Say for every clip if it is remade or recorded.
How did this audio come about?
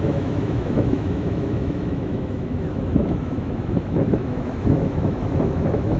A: remade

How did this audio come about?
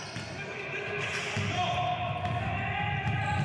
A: recorded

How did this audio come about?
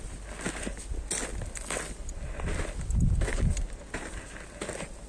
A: recorded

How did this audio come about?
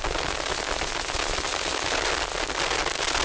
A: recorded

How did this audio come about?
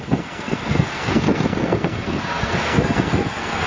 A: remade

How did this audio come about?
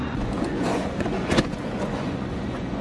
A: remade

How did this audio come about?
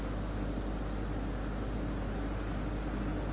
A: recorded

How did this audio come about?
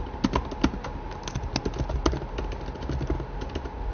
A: recorded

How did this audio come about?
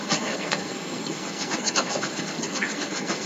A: remade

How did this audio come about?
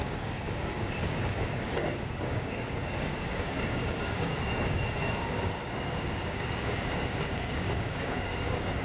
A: remade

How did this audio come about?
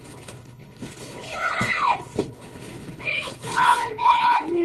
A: remade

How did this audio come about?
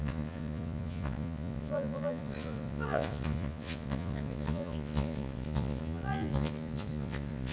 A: remade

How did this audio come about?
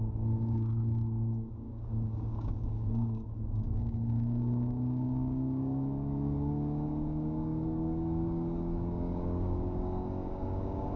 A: remade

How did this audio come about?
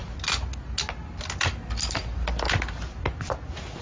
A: recorded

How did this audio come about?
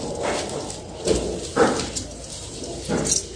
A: recorded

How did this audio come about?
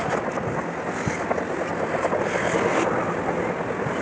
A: recorded